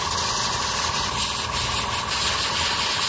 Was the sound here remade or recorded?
recorded